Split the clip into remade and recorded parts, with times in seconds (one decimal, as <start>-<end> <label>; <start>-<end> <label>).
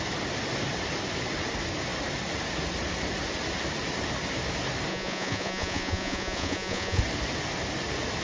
0.0-4.9 recorded; 4.9-7.0 remade; 7.0-8.2 recorded